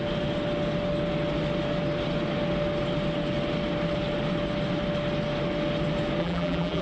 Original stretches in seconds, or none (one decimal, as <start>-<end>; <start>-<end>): 0.0-6.2